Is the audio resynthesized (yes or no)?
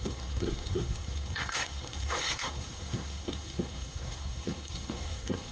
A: yes